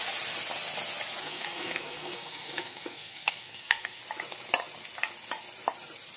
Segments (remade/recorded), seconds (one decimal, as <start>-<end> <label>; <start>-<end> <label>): 0.0-1.2 recorded; 1.2-4.0 remade; 4.0-6.2 recorded